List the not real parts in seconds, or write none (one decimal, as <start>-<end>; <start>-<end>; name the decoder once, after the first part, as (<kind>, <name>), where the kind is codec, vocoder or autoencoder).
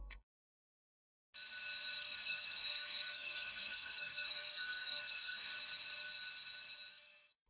0.0-0.4 (codec, SNAC); 2.0-5.5; 6.9-7.5